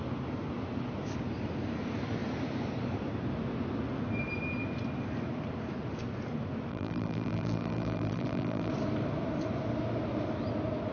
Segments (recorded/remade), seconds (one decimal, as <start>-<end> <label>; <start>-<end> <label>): 0.0-6.7 recorded; 6.7-8.7 remade; 8.7-10.9 recorded

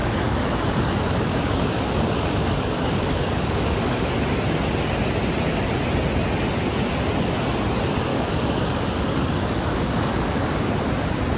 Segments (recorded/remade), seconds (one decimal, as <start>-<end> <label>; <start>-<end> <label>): 0.0-4.1 remade; 4.1-8.1 recorded; 8.1-10.7 remade; 10.7-11.4 recorded

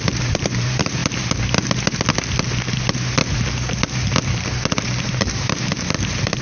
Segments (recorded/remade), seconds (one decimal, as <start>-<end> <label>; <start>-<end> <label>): 0.0-1.0 remade; 1.0-4.8 recorded; 4.8-6.4 remade